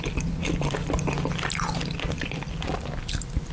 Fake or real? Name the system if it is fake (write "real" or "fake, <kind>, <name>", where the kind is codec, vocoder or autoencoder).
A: real